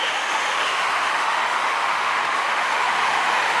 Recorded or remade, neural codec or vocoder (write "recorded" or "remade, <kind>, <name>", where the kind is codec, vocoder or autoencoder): remade, autoencoder, DAC-VAE